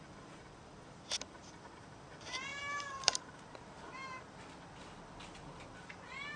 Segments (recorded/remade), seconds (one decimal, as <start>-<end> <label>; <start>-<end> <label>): 0.0-2.5 recorded; 2.5-4.2 remade; 4.2-6.4 recorded